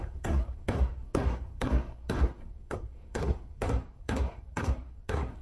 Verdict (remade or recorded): remade